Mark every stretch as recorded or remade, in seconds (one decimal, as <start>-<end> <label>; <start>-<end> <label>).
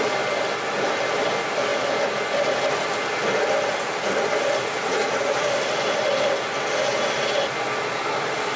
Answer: 0.0-4.6 recorded; 4.6-5.5 remade; 5.5-8.6 recorded